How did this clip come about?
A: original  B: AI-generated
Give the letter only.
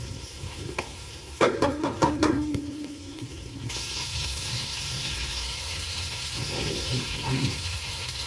B